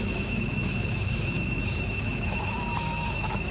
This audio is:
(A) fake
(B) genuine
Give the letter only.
A